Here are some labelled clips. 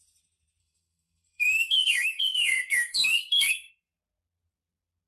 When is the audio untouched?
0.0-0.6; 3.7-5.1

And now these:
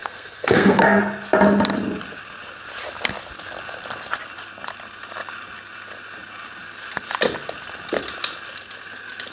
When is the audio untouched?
1.0-9.3

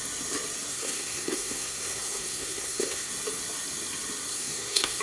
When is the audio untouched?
0.0-0.7; 3.1-4.3

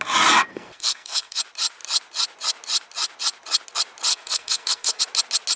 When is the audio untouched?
0.0-0.5; 1.4-4.1; 5.0-5.6

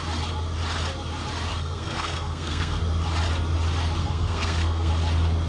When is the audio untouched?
0.0-1.5; 2.8-4.0; 4.9-5.5